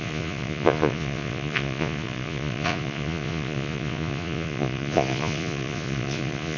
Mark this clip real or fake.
fake